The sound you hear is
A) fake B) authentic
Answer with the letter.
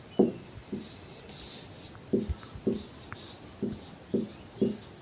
B